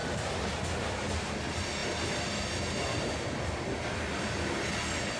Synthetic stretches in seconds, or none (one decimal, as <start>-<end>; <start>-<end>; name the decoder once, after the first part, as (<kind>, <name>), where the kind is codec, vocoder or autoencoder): none